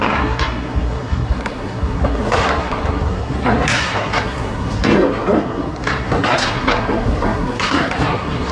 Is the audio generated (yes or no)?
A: yes